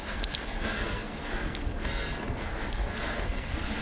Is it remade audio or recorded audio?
remade